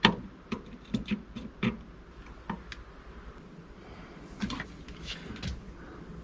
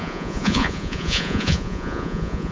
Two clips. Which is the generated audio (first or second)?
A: second